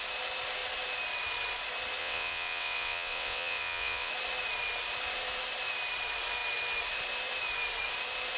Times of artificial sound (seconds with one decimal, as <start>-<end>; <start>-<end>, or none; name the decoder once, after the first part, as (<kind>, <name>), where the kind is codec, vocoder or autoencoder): 2.0-4.1 (vocoder, WaveNeXt)